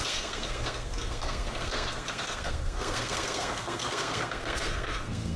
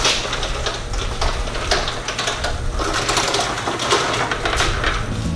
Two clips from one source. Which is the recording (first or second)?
second